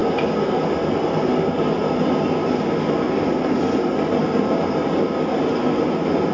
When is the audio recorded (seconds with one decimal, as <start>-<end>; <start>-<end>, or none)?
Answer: 0.0-6.3